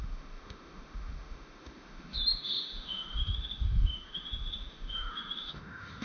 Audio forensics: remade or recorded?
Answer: remade